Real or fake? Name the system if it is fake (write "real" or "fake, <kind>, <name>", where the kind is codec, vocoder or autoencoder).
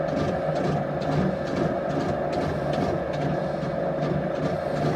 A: real